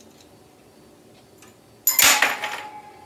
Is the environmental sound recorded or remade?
recorded